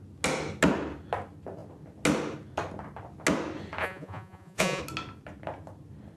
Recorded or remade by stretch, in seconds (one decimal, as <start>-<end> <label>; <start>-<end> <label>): 0.0-3.8 recorded; 3.8-4.8 remade; 4.8-6.2 recorded